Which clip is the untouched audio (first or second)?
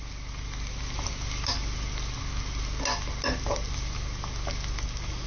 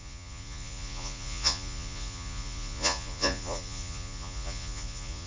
first